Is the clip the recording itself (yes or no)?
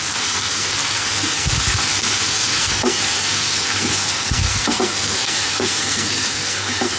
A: no